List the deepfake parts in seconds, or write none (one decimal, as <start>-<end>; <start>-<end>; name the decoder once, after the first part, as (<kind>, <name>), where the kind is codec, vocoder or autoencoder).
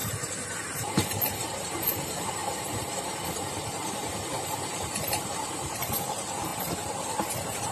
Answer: 0.0-7.7 (vocoder, BigVGAN v2)